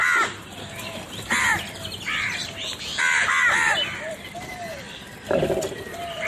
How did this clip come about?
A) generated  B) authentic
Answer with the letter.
A